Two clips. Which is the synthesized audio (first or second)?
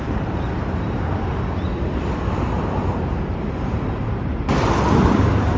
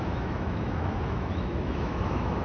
second